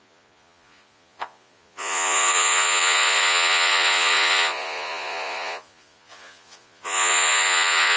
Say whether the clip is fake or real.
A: fake